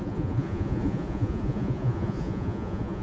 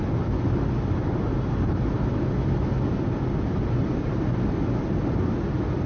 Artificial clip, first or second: first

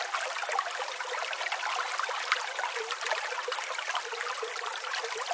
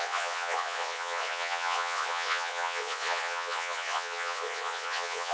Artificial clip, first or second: second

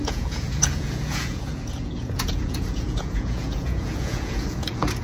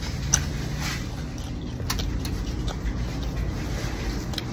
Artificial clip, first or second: first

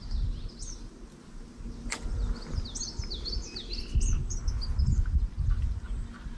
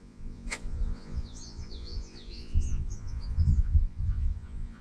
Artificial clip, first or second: second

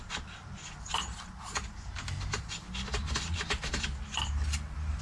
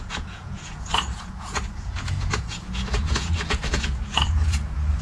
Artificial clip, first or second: second